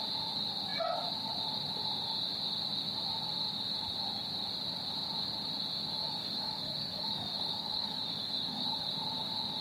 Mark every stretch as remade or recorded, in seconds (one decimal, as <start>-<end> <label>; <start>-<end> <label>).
0.0-6.0 recorded; 6.0-8.8 remade; 8.8-9.6 recorded

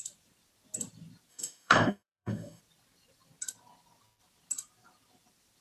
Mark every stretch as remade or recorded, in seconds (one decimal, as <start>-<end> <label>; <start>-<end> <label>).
0.0-1.3 recorded; 1.3-2.6 remade; 2.6-5.6 recorded

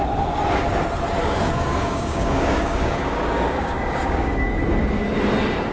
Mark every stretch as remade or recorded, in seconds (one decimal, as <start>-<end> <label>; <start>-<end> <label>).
0.0-1.2 recorded; 1.2-4.6 remade; 4.6-5.7 recorded

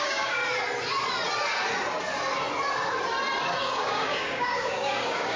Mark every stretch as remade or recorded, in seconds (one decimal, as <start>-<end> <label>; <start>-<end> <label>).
0.0-0.4 remade; 0.4-3.6 recorded; 3.6-5.4 remade

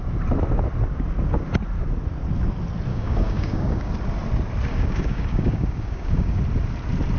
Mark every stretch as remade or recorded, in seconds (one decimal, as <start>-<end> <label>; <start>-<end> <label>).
0.0-2.9 recorded; 2.9-3.9 remade; 3.9-4.7 recorded; 4.7-6.4 remade; 6.4-7.2 recorded

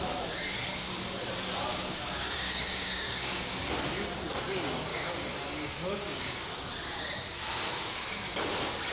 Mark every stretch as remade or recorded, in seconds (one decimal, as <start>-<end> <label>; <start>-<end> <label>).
0.0-1.7 recorded; 1.7-3.5 remade; 3.5-4.9 recorded; 4.9-6.5 remade; 6.5-8.9 recorded

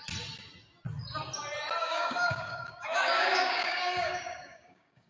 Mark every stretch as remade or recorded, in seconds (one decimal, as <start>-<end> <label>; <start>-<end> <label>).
0.0-1.8 recorded; 1.8-5.1 remade